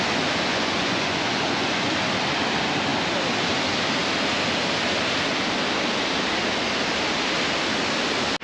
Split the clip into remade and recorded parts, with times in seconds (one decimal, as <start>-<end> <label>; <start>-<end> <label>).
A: 0.0-0.5 recorded; 0.5-1.9 remade; 1.9-8.4 recorded